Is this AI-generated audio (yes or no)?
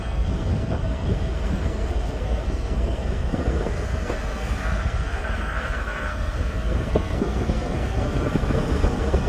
yes